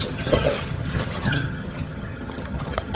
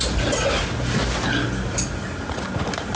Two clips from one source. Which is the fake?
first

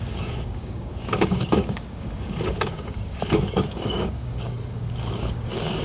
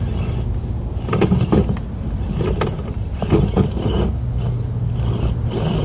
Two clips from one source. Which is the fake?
first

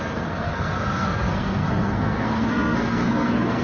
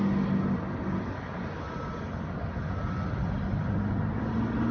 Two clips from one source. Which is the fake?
first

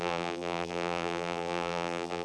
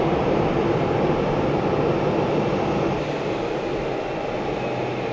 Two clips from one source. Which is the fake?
first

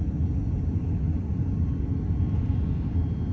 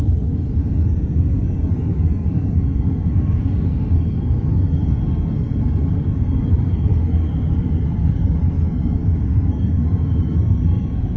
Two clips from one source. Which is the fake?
second